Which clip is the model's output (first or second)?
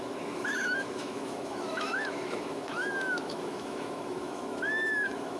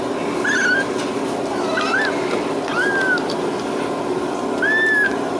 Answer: first